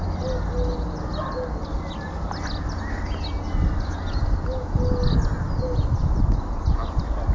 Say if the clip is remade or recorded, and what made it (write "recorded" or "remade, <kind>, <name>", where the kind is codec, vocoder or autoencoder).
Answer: recorded